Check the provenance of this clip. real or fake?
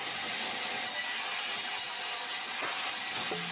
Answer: real